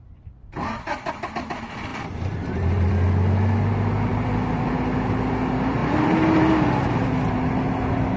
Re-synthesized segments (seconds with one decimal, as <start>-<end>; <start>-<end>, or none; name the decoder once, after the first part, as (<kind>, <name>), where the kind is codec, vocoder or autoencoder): 1.9-2.9 (vocoder, BigVGAN v2); 4.1-4.7; 5.8-7.1